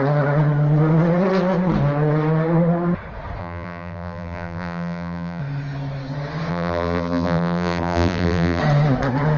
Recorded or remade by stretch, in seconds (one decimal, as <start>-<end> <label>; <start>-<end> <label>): 0.0-3.4 recorded; 3.4-5.4 remade; 5.4-6.5 recorded; 6.5-8.6 remade; 8.6-9.4 recorded